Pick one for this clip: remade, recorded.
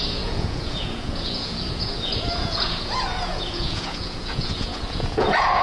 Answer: remade